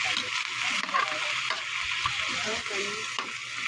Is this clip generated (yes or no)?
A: no